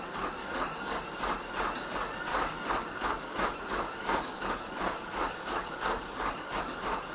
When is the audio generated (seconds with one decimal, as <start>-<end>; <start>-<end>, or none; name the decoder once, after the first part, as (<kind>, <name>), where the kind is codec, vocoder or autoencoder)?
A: 0.4-1.0 (codec, DAC); 2.3-6.6